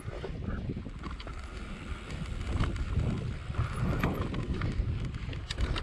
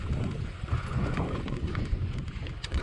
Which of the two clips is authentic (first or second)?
first